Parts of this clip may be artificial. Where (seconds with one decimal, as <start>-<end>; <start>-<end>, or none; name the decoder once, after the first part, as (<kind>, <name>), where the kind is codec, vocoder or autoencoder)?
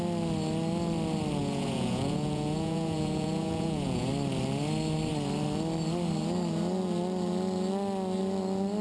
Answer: 1.4-4.1 (vocoder, Vocos)